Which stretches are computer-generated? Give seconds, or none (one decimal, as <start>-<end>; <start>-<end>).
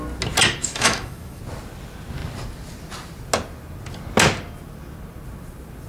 0.6-1.4